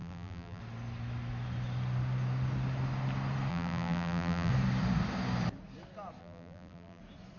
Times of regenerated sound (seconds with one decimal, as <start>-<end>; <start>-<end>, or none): 0.0-0.6; 3.5-4.5; 6.2-7.0